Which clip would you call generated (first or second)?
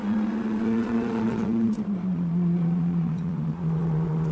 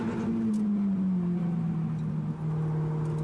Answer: first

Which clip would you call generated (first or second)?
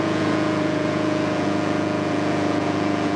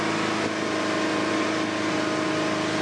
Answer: first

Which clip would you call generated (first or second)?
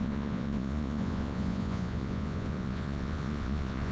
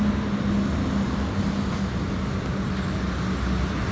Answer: first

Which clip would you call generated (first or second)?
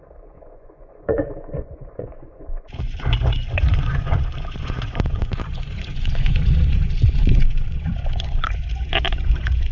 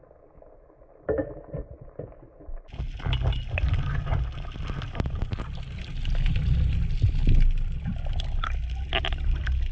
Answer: first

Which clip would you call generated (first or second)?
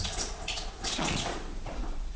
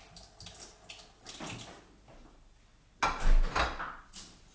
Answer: first